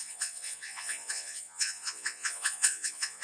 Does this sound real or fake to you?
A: fake